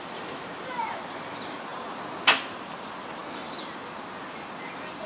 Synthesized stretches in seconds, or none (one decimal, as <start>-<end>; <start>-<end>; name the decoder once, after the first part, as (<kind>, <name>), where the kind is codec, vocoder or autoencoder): 0.0-1.7 (vocoder, BigVGAN v2); 2.3-3.2; 4.3-5.1